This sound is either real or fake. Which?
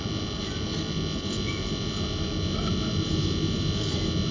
real